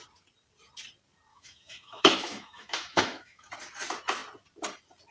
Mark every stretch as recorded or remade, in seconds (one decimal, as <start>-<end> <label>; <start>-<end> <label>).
0.0-1.3 recorded; 1.3-3.5 remade; 3.5-5.1 recorded

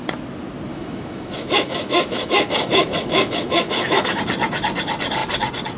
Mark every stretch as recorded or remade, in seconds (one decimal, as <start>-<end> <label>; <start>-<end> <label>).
0.0-0.7 recorded; 0.7-4.2 remade; 4.2-5.8 recorded

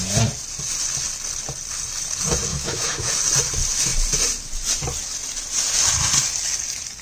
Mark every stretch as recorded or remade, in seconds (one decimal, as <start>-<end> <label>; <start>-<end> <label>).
0.0-2.5 recorded; 2.5-3.1 remade; 3.1-7.0 recorded

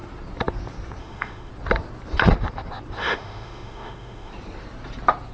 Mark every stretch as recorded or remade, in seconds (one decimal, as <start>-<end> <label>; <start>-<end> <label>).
0.0-1.0 recorded; 1.0-1.5 remade; 1.5-3.0 recorded; 3.0-4.3 remade; 4.3-5.3 recorded

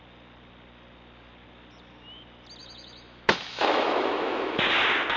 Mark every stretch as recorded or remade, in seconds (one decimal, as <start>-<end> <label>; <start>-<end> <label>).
0.0-2.6 recorded; 2.6-4.6 remade; 4.6-5.2 recorded

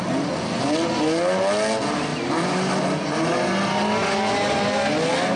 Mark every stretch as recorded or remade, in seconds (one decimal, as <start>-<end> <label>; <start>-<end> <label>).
0.0-5.4 recorded

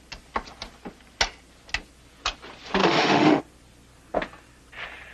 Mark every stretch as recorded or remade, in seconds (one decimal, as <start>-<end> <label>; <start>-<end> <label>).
0.0-2.8 recorded; 2.8-3.4 remade; 3.4-5.1 recorded

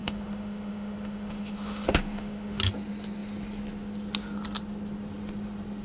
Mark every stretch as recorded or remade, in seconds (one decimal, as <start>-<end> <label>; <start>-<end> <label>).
0.0-2.6 remade; 2.6-5.8 recorded